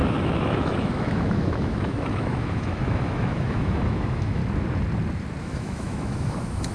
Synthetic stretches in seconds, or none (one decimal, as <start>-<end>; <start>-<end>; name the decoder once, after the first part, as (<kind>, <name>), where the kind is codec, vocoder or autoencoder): 0.0-4.4 (autoencoder, DAC-VAE); 5.4-6.7